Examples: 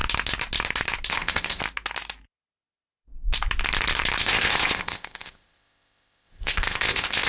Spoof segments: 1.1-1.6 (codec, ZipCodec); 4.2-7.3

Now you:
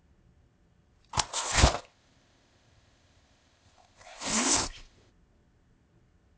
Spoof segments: 1.3-5.1 (codec, ZipCodec)

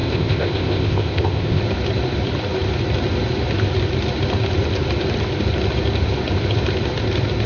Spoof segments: 0.0-1.6 (codec, ZipCodec)

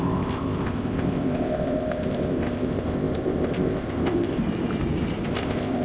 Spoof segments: 0.0-4.4 (codec, ZipCodec); 5.3-5.8